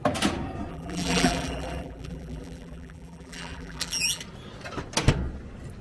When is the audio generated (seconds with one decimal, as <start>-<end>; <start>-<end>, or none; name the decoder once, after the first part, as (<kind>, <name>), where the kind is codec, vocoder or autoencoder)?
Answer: 0.7-4.2 (vocoder, BigVGAN v2)